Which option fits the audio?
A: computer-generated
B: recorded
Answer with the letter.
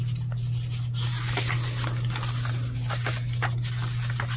B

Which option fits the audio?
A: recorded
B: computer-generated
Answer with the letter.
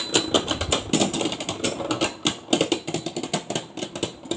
A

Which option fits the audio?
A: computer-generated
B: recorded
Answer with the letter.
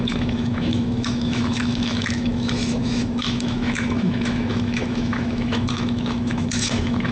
A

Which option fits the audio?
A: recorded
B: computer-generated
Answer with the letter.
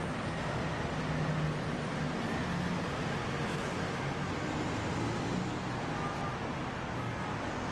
A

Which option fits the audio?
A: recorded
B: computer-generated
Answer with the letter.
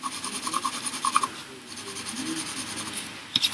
A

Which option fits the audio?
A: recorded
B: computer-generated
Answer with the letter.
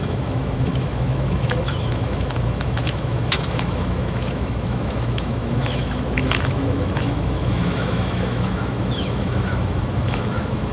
B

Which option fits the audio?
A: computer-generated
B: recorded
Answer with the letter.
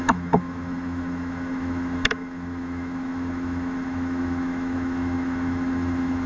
A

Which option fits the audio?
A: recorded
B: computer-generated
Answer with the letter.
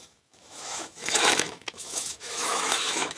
B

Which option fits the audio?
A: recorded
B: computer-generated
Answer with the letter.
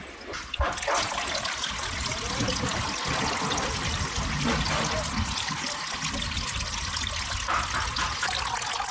A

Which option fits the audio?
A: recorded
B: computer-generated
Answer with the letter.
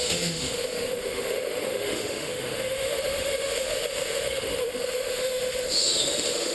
B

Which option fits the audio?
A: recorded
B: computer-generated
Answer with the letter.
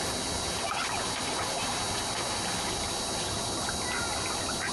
A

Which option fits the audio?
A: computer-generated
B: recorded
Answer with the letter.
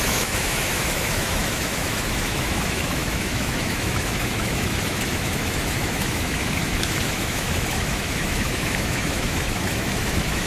A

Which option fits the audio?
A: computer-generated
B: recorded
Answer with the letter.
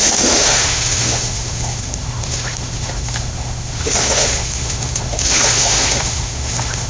A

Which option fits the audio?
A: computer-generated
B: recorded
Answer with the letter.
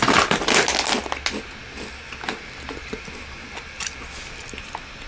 B